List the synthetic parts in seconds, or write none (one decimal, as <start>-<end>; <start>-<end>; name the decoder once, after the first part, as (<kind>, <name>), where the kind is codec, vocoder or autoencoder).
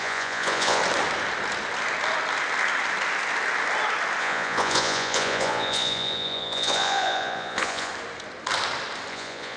0.0-0.8 (vocoder, Vocos); 4.2-7.9; 9.1-9.6